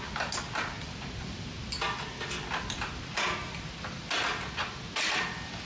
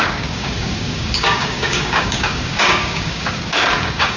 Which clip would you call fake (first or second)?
second